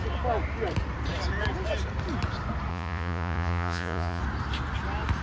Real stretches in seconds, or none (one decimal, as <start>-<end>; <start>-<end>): 0.0-2.7; 4.2-5.2